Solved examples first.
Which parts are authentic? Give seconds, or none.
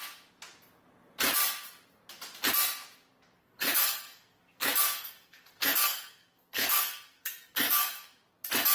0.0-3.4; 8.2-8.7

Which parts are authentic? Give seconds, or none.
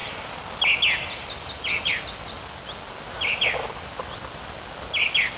0.0-5.4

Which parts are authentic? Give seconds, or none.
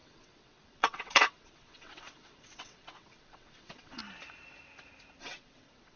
4.0-5.2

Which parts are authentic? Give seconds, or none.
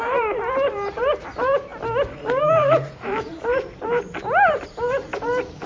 1.7-2.4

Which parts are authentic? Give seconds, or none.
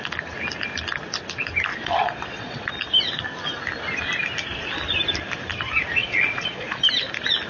0.0-1.7; 2.7-6.0; 6.8-7.5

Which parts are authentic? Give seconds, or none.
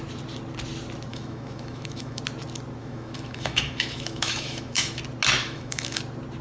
0.0-1.1; 2.2-2.8; 5.0-5.4; 6.0-6.4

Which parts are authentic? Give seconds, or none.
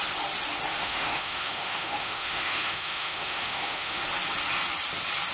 0.0-0.8; 4.0-5.3